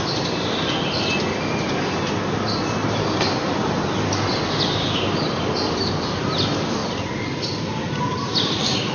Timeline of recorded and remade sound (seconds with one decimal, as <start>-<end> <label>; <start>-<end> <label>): 0.0-8.9 recorded